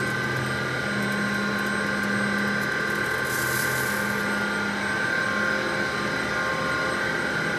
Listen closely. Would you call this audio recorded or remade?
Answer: recorded